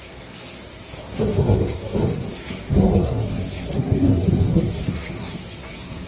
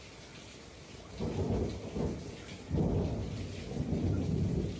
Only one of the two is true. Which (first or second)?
second